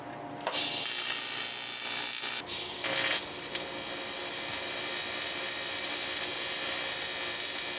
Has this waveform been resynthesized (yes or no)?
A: no